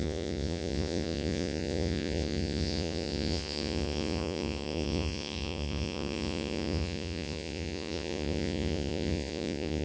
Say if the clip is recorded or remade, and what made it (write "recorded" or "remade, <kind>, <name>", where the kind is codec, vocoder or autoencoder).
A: remade, vocoder, Vocos